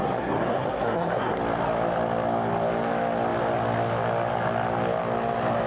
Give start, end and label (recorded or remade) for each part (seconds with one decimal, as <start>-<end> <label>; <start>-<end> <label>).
0.0-1.4 remade; 1.4-5.7 recorded